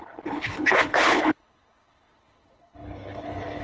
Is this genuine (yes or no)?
no